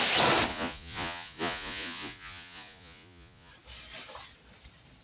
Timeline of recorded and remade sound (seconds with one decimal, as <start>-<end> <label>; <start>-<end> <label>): 0.0-0.5 recorded; 0.5-3.5 remade; 3.5-5.0 recorded